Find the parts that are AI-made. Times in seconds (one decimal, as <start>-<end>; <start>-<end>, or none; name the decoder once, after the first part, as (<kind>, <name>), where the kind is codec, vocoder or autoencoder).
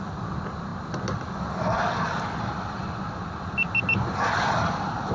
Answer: none